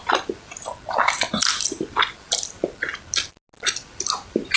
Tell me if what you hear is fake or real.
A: real